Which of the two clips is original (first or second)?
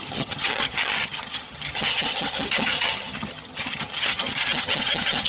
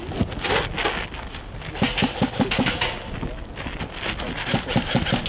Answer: second